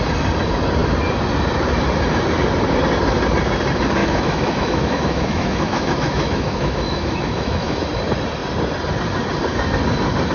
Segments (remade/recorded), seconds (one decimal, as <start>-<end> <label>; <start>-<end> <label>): 0.0-4.0 recorded; 4.0-7.8 remade; 7.8-10.3 recorded